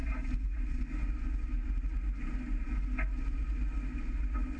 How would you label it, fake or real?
real